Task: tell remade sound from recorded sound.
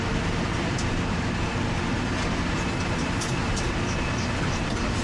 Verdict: remade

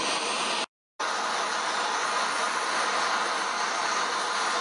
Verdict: recorded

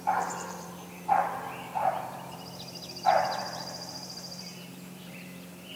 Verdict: remade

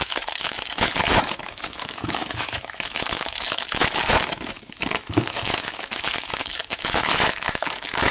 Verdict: remade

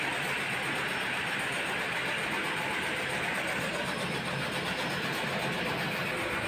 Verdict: recorded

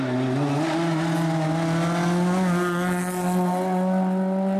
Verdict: recorded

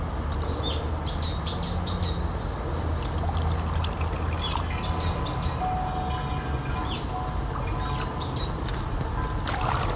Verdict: recorded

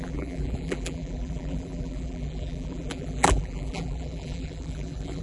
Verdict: remade